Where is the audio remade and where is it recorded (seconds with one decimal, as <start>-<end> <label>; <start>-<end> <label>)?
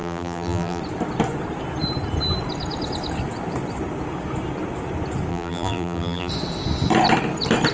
0.0-0.8 remade; 0.8-5.3 recorded; 5.3-6.3 remade; 6.3-7.7 recorded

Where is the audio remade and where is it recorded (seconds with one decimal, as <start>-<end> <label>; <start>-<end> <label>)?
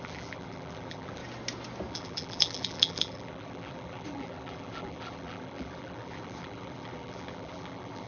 0.0-1.2 remade; 1.2-1.9 recorded; 1.9-8.1 remade